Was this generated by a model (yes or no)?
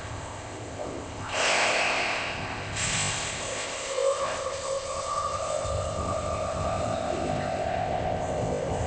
yes